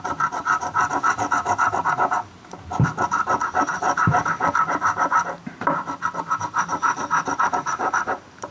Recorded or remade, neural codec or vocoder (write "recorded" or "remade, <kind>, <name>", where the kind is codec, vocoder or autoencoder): remade, vocoder, BigVGAN v2